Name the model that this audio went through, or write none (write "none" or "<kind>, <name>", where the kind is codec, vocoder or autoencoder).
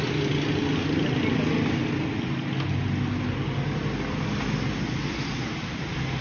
none